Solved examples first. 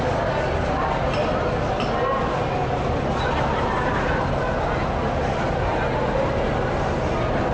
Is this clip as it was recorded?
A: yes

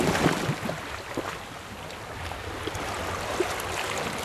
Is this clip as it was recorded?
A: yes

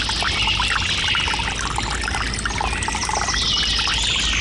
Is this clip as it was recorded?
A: yes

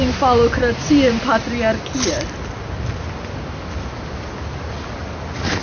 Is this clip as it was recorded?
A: yes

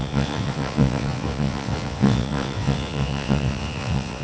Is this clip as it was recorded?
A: no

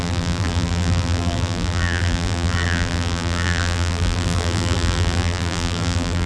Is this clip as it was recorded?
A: no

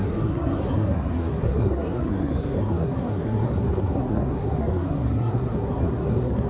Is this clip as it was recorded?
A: no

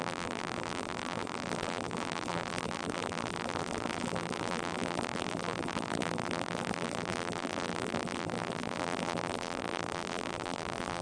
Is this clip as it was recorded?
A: no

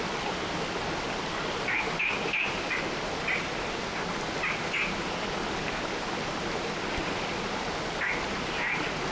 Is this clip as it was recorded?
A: yes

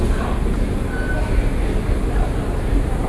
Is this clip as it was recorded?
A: yes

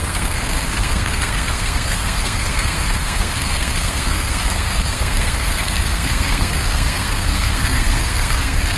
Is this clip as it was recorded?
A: no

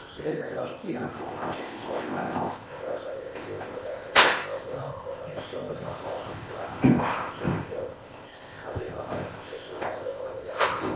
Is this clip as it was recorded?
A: no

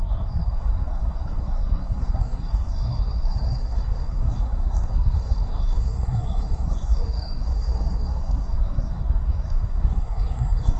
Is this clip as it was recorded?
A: no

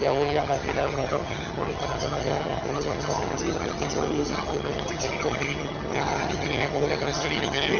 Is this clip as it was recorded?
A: no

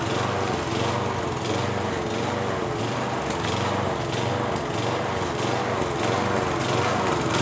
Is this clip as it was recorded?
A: yes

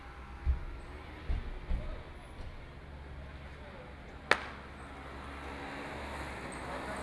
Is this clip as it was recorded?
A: yes